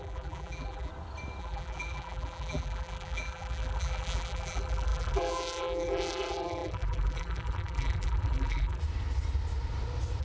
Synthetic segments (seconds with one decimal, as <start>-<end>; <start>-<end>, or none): 0.0-0.9; 1.4-8.8